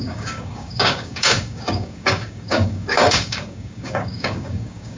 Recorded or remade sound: remade